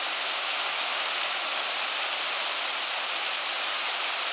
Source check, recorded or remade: recorded